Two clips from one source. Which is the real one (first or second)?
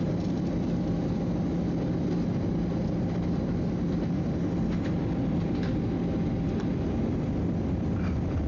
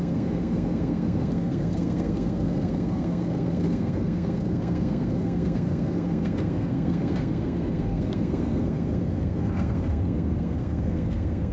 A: first